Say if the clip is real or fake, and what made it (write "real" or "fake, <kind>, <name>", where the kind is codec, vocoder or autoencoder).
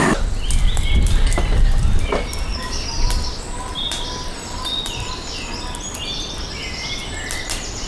real